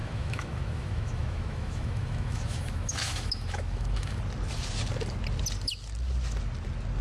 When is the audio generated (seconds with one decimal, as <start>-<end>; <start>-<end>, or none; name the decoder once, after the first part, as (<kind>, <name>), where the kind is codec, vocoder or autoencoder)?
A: 0.0-4.2 (autoencoder, DAC-VAE)